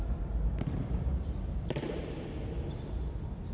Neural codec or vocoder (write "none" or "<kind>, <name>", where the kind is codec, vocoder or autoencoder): none